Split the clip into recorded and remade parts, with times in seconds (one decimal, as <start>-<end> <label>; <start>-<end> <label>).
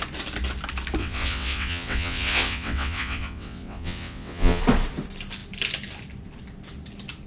0.0-1.0 recorded; 1.0-4.6 remade; 4.6-7.3 recorded